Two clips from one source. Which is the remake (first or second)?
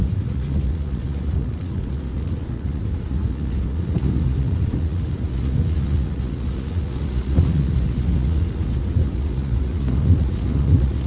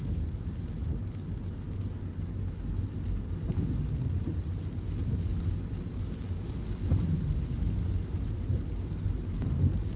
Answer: first